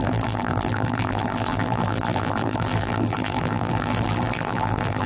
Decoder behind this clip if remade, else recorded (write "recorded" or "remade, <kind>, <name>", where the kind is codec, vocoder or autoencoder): remade, vocoder, BigVGAN v2